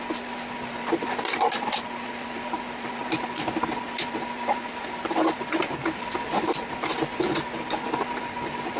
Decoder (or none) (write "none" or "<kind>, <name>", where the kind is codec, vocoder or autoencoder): none